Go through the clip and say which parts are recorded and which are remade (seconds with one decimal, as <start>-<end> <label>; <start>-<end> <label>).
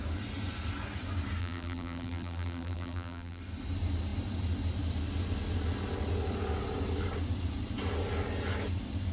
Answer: 0.0-1.4 recorded; 1.4-3.4 remade; 3.4-9.1 recorded